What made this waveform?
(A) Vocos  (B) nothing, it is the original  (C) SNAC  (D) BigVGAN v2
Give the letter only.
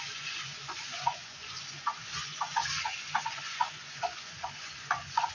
A